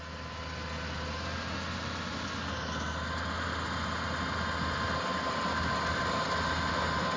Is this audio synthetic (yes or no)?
no